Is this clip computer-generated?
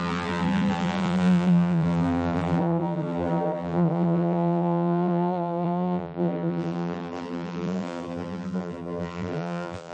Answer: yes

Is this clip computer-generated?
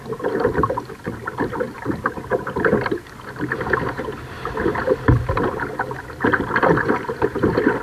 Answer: no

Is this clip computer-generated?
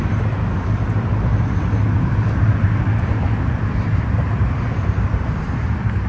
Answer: yes